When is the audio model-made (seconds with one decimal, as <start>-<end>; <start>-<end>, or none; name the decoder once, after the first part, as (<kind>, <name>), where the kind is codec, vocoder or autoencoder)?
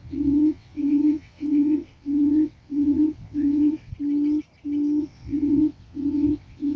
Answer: 0.0-3.9 (vocoder, WaveNeXt); 5.0-6.8